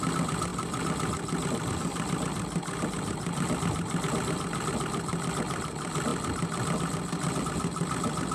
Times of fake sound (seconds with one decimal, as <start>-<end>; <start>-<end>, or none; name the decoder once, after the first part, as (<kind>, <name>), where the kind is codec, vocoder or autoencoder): none